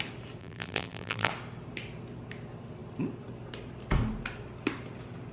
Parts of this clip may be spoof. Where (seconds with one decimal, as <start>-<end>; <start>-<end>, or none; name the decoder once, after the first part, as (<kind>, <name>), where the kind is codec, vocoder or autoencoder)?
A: 0.4-1.3 (vocoder, BigVGAN v2)